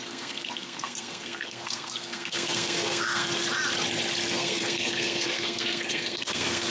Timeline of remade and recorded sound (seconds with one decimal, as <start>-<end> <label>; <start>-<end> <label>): 0.0-3.3 remade; 3.3-4.3 recorded; 4.3-6.7 remade